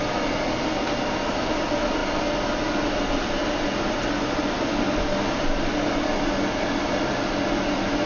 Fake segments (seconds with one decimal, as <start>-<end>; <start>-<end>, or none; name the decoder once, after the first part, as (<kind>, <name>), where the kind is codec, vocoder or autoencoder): none